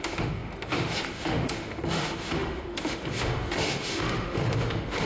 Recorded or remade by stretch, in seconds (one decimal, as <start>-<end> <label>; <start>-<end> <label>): 0.0-5.1 remade